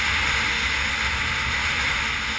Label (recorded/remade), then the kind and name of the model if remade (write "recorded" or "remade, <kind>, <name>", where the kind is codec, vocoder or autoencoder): recorded